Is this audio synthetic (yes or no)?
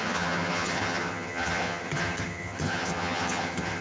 yes